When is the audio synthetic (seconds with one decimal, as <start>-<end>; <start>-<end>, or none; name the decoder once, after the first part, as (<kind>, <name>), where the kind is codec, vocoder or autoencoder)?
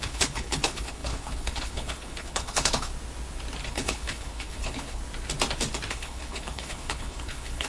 0.0-2.9 (codec, HILCodec); 3.7-5.0; 5.9-7.7